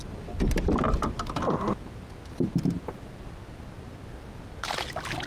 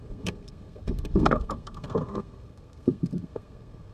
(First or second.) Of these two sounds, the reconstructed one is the second